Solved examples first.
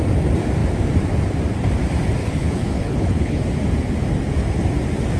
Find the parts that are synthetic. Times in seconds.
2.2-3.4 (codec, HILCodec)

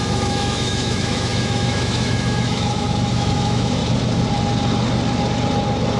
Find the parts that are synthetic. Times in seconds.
0.0-3.8 (autoencoder, DAC-VAE)

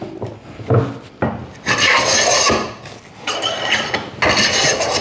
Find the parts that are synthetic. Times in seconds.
none

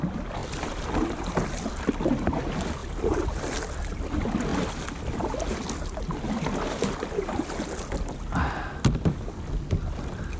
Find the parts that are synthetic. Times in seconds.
none

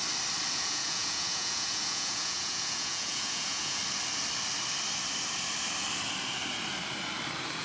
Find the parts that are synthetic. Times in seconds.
0.5-3.8 (vocoder, Vocos)

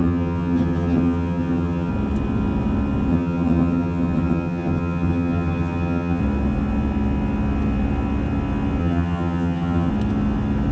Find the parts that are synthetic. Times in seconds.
0.0-1.9 (vocoder, HiFi-GAN); 3.1-6.2; 8.8-9.9

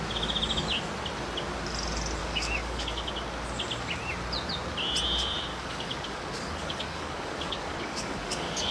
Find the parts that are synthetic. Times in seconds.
2.2-3.1 (codec, DAC); 5.5-8.7